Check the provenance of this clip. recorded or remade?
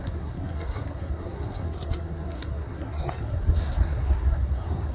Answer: remade